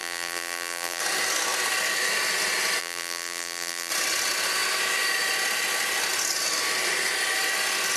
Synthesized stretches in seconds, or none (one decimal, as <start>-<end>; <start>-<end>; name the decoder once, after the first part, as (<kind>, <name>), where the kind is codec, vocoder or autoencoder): 0.0-1.0 (vocoder, BigVGAN v2); 2.8-3.9